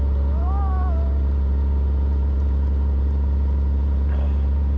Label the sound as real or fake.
fake